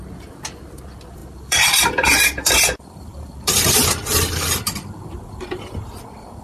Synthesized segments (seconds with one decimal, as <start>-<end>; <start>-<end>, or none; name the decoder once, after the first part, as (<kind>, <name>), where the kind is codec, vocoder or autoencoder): 1.2-5.0 (vocoder, BigVGAN v2)